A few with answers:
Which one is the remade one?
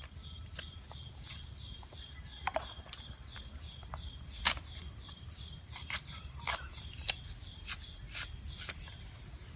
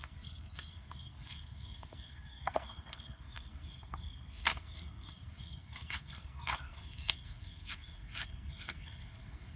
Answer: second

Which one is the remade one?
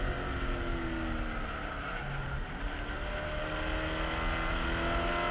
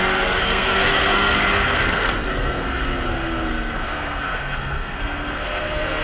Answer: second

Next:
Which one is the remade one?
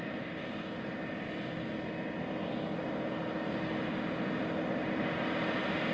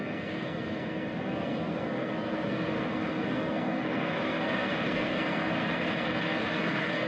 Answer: second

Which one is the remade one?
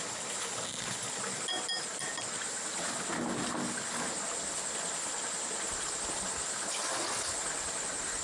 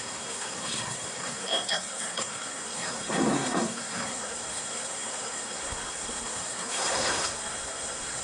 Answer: second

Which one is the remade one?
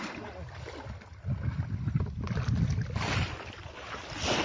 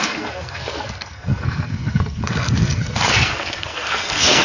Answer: second